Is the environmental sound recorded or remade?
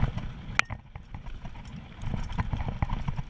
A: recorded